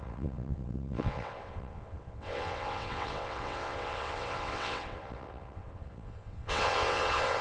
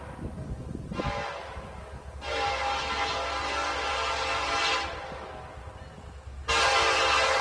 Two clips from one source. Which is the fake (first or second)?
first